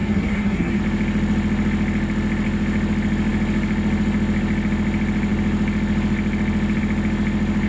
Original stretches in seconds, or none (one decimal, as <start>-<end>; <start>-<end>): 0.8-7.7